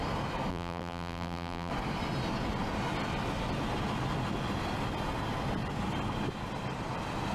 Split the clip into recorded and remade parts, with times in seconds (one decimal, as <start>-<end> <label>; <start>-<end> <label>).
0.0-0.5 recorded; 0.5-1.7 remade; 1.7-7.3 recorded